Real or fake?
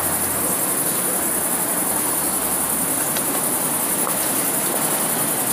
real